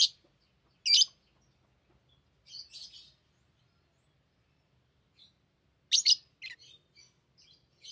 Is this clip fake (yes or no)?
no